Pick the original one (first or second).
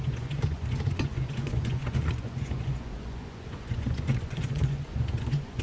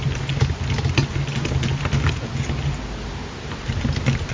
second